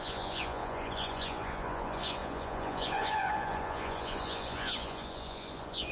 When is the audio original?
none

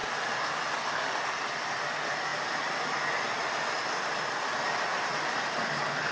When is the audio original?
0.0-6.1